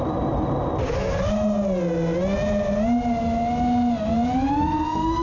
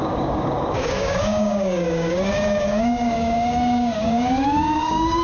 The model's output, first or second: second